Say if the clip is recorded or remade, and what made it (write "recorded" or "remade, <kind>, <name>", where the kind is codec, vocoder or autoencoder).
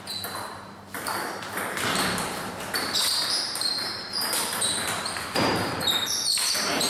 remade, vocoder, BigVGAN v2